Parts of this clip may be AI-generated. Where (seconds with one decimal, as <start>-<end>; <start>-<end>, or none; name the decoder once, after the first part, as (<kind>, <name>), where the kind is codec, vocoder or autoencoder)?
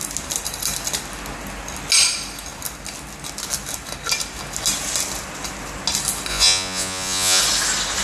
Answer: 6.3-7.4 (vocoder, Vocos)